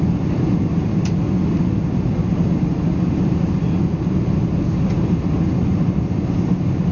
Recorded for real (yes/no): yes